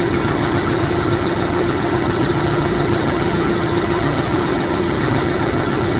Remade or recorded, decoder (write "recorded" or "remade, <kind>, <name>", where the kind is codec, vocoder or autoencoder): remade, vocoder, HiFi-GAN